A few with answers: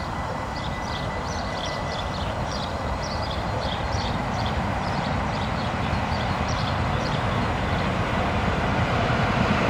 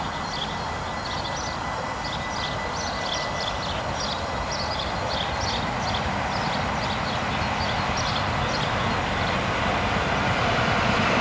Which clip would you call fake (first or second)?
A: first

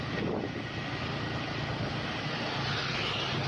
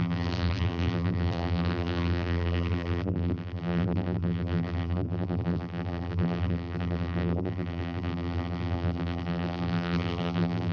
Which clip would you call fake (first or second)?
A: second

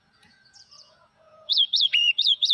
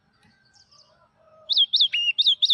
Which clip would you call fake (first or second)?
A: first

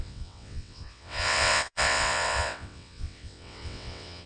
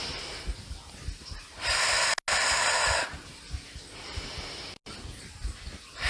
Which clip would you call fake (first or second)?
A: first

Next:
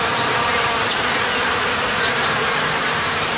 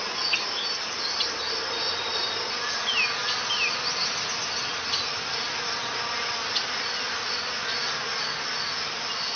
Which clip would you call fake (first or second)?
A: first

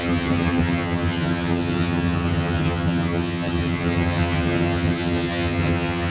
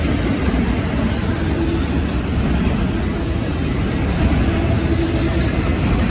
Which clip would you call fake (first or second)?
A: first